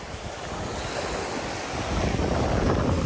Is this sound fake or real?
real